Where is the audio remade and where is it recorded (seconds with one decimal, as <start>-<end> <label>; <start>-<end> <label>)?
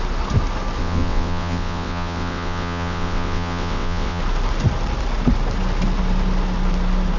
0.0-0.8 recorded; 0.8-4.2 remade; 4.2-7.2 recorded